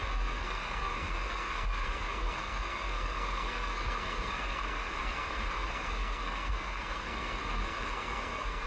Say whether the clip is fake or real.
fake